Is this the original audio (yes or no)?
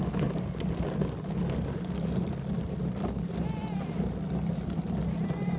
yes